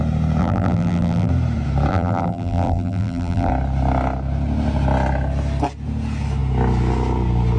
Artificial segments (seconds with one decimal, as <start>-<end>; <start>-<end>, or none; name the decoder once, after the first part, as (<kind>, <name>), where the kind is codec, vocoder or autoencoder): 0.4-1.3 (vocoder, BigVGAN v2); 1.9-3.5